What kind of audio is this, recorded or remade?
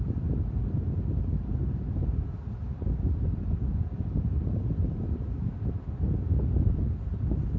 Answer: recorded